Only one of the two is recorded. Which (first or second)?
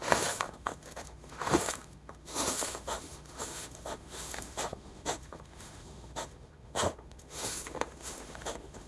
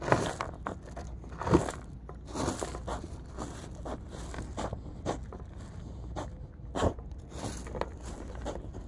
second